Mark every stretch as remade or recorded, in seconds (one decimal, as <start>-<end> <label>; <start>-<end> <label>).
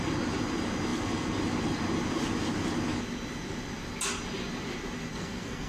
0.0-5.1 recorded; 5.1-5.7 remade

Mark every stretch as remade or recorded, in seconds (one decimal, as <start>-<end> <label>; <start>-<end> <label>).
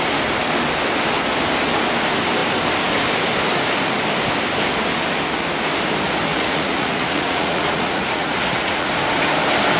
0.0-6.3 recorded; 6.3-8.9 remade; 8.9-9.8 recorded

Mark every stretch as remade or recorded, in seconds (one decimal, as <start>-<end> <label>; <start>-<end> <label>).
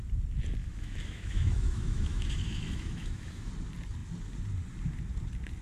0.0-0.6 recorded; 0.6-3.5 remade; 3.5-5.6 recorded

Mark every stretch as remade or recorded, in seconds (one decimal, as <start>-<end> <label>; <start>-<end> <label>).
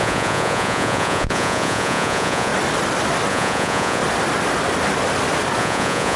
0.0-2.5 remade; 2.5-3.3 recorded; 3.3-4.0 remade; 4.0-5.6 recorded; 5.6-6.2 remade